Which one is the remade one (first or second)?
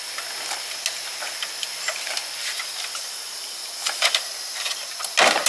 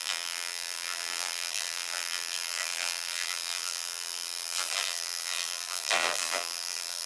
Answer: second